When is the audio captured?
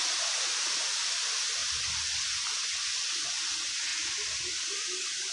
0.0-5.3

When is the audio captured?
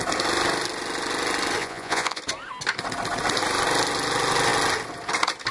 0.0-1.6; 2.2-5.5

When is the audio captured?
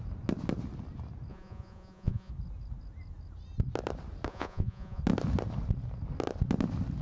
0.0-1.3; 2.3-4.3; 5.0-7.0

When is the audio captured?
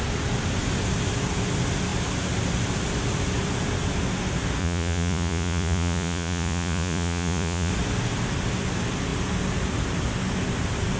0.0-4.6; 7.7-11.0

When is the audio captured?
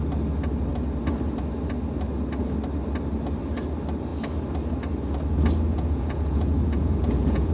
0.0-5.7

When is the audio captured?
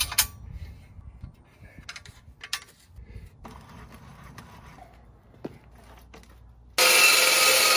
0.0-7.8